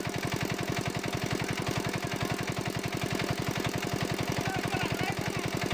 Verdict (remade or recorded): recorded